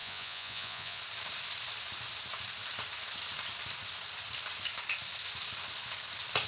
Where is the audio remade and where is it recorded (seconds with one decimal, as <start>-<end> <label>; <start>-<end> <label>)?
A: 0.0-1.0 remade; 1.0-6.5 recorded